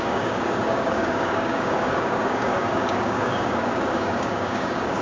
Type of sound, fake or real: fake